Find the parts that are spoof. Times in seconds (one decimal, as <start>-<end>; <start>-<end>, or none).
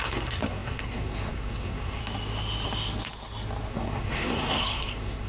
0.0-2.0; 3.7-5.3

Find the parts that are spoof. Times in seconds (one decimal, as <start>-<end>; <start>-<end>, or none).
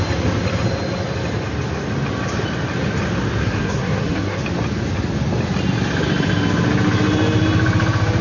3.4-4.4